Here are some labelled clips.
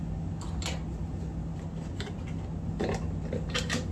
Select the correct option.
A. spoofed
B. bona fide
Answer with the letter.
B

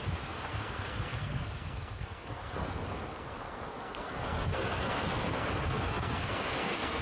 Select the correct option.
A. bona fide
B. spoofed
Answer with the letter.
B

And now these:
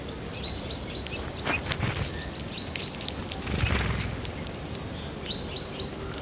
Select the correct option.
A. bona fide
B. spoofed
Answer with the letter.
A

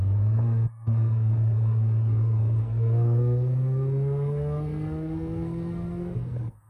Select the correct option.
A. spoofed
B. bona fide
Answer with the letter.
A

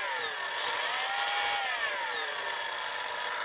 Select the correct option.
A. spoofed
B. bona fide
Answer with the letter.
B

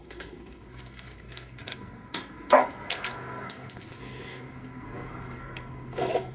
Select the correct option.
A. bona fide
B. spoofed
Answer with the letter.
B